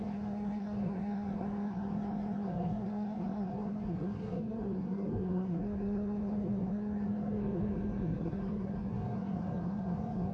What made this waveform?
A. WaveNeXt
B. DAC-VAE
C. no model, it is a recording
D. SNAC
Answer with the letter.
D